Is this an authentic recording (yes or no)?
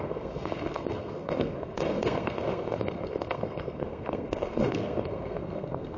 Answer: no